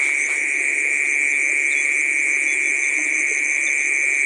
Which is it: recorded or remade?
recorded